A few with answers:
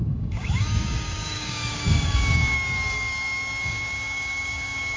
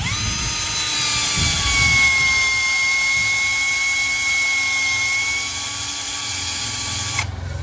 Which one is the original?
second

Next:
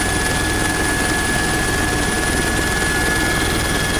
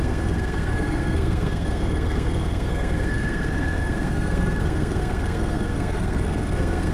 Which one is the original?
first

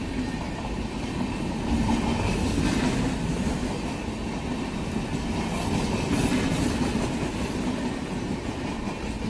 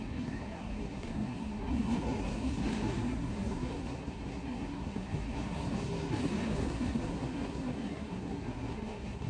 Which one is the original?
first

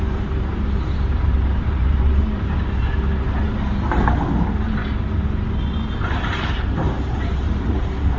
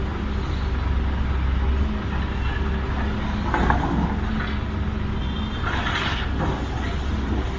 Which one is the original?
second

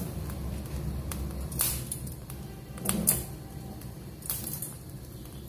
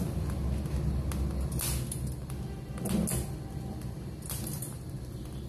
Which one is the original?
second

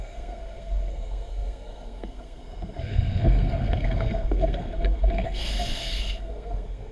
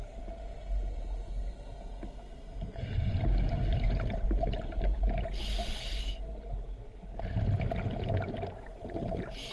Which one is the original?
second